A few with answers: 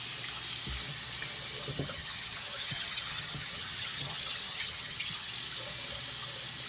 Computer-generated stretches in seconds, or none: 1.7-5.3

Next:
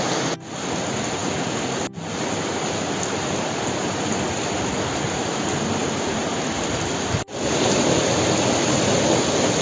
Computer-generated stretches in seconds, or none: none

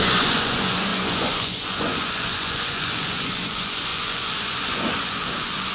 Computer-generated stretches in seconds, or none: 0.0-5.7

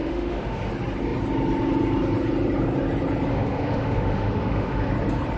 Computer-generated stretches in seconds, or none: 0.0-0.7; 3.3-4.9